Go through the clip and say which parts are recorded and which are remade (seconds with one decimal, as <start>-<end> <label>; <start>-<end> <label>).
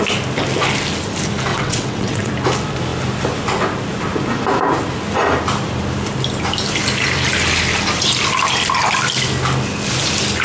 0.0-1.5 recorded; 1.5-2.3 remade; 2.3-10.4 recorded